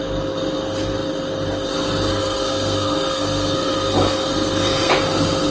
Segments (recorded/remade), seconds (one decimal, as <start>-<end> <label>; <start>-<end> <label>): 0.0-2.1 recorded; 2.1-4.9 remade; 4.9-5.5 recorded